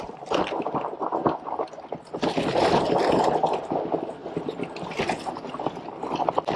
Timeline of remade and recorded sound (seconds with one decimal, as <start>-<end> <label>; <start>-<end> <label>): 0.0-6.6 recorded